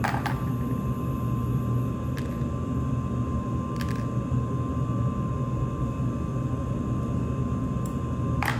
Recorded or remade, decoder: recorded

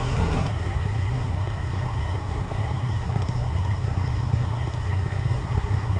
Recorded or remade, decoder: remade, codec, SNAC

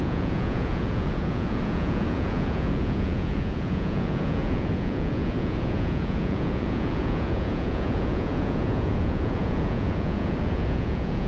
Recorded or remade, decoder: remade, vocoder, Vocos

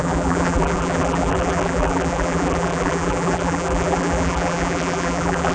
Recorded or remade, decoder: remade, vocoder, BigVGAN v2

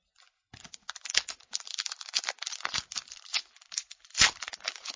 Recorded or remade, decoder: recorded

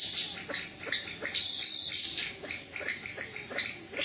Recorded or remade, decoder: recorded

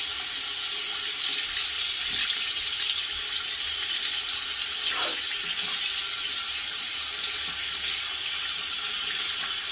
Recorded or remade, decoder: remade, vocoder, BigVGAN v2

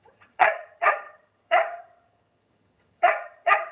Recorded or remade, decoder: remade, vocoder, HiFi-GAN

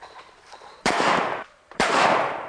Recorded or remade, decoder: remade, vocoder, BigVGAN v2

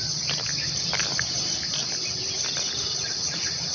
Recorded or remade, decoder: recorded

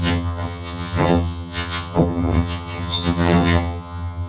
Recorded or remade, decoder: remade, vocoder, HiFi-GAN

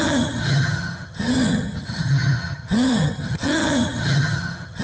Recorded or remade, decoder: remade, vocoder, HiFi-GAN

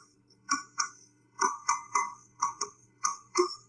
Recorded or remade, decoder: remade, codec, SNAC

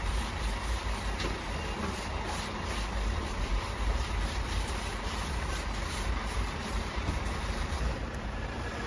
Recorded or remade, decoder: remade, vocoder, BigVGAN v2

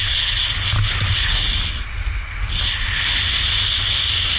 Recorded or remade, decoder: recorded